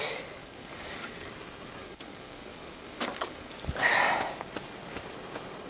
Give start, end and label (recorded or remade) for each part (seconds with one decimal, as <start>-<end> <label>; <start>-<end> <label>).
0.0-0.4 recorded; 0.4-1.3 remade; 1.3-1.8 recorded; 1.8-3.7 remade; 3.7-5.7 recorded